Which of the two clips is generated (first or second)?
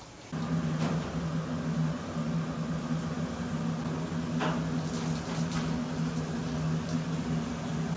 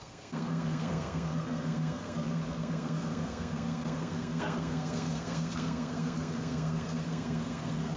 second